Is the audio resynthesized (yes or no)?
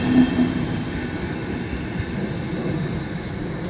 no